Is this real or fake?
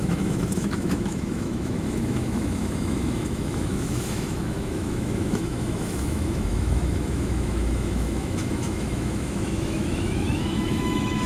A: fake